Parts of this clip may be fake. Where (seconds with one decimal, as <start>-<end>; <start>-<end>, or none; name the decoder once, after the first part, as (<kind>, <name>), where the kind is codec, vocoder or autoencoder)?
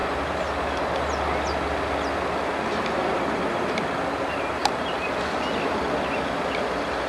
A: 0.0-0.9 (vocoder, BigVGAN v2); 4.6-5.1